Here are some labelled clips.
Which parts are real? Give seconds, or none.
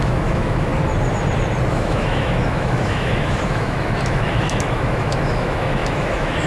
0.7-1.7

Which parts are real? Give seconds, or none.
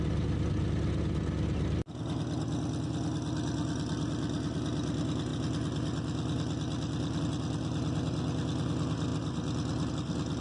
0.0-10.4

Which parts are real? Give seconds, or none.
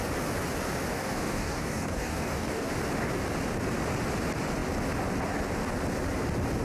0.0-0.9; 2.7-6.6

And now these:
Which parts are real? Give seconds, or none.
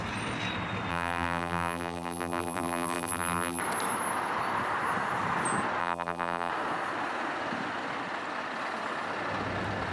0.0-0.9; 3.6-5.8; 6.5-9.9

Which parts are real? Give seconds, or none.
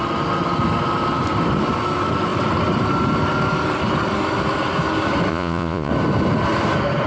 0.0-5.3; 5.9-7.1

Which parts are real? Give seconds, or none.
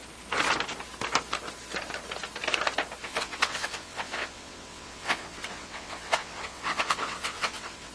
0.0-3.0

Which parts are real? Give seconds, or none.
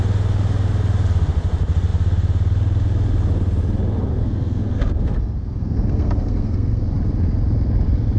0.0-4.1; 6.8-8.2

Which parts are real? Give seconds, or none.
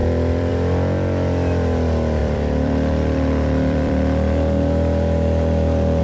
0.5-2.2